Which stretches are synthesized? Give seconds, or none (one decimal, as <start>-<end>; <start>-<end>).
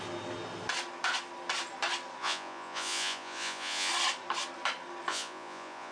2.2-3.9; 5.1-5.9